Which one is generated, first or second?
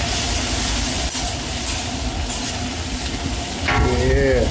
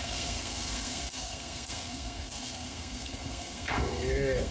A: second